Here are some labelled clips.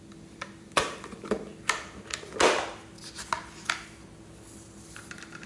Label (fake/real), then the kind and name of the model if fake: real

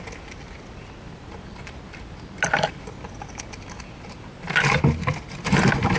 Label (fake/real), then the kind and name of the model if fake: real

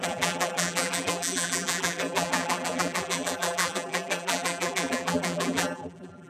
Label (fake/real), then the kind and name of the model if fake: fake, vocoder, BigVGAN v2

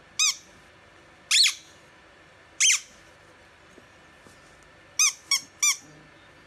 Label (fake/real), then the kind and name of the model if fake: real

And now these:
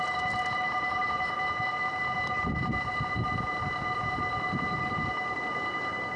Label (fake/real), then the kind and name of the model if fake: real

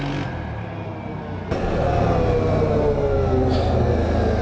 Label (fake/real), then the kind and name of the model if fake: real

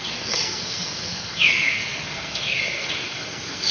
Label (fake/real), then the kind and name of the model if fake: fake, codec, SNAC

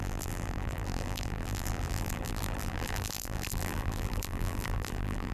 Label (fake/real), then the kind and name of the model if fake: fake, vocoder, BigVGAN v2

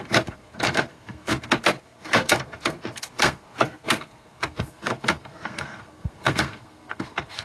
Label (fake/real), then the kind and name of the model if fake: fake, codec, SNAC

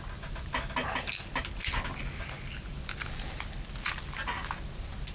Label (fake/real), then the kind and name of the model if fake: real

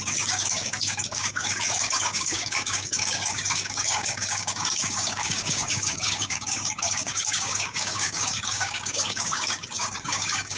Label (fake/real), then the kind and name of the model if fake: fake, codec, DAC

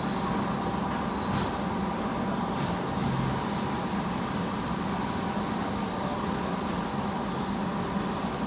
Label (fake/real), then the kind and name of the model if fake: real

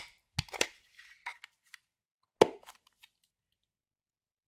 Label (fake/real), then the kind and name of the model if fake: real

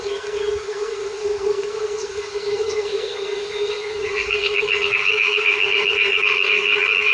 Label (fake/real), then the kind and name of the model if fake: fake, codec, SNAC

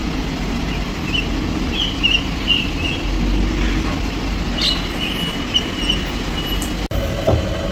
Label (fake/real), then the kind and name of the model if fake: real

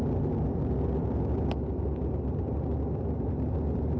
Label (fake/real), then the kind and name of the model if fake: real